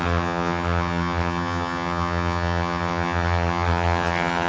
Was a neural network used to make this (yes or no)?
yes